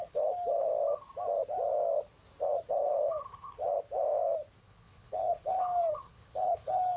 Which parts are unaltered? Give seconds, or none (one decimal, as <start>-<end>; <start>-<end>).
0.7-2.7; 3.6-4.6